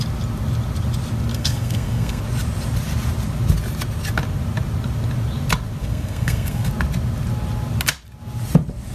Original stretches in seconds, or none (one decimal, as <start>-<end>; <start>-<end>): 0.0-1.3; 2.2-5.8; 6.7-8.9